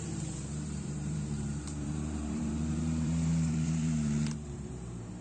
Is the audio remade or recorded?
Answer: remade